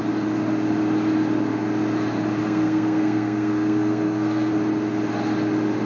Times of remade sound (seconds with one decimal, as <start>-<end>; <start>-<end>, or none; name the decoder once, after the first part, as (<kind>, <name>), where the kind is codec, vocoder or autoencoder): 2.4-4.5 (codec, SNAC)

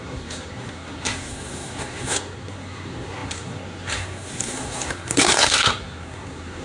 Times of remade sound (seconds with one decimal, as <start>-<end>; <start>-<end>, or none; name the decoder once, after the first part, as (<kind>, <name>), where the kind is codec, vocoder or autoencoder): 0.0-6.6 (codec, SNAC)

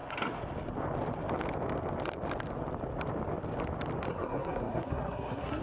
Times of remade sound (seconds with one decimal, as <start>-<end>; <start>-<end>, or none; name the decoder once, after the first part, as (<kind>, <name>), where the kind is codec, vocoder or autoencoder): 4.1-5.6 (codec, SNAC)

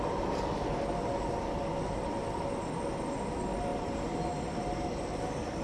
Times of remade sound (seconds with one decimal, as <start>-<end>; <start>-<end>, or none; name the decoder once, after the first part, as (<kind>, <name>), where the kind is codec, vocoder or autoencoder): none

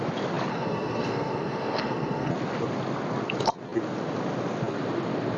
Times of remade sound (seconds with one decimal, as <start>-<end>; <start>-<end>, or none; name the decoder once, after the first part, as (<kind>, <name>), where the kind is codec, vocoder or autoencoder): 0.5-2.3 (codec, SNAC)